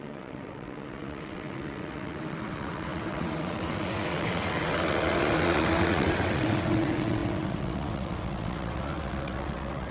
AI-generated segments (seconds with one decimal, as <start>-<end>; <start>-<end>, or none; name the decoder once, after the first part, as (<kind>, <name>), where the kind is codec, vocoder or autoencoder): 0.0-9.9 (vocoder, WaveNeXt)